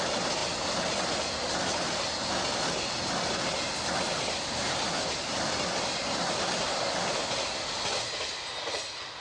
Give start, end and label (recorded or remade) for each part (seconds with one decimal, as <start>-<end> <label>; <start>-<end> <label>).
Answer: 0.0-9.2 recorded